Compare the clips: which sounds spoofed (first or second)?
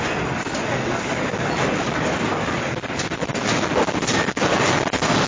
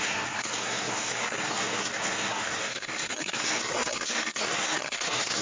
second